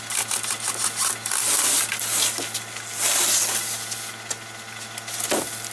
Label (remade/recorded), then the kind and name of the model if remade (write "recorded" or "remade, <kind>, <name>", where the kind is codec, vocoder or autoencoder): recorded